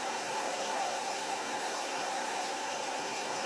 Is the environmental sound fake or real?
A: fake